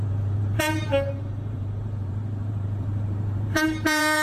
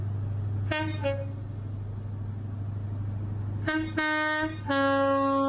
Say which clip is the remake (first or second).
first